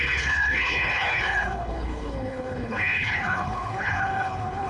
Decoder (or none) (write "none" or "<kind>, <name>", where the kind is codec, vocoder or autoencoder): codec, HILCodec